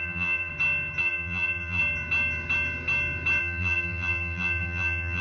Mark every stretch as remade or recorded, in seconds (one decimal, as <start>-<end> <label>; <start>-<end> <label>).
0.0-0.5 remade; 0.5-1.0 recorded; 1.0-1.8 remade; 1.8-3.4 recorded; 3.4-5.2 remade